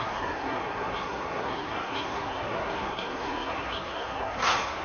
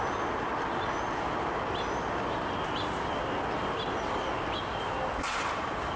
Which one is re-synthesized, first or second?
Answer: first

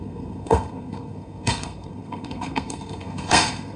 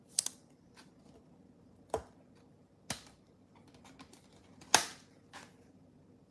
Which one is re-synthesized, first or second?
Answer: first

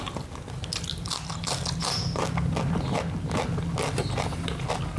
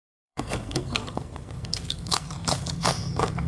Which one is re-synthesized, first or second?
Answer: second